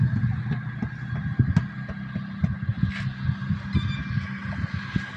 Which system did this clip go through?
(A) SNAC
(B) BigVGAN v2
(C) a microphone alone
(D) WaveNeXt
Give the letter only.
C